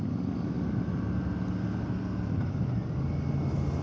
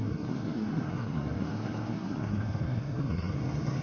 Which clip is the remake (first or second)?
second